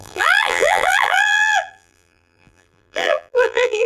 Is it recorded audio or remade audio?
remade